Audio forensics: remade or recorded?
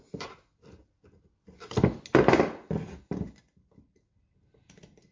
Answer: recorded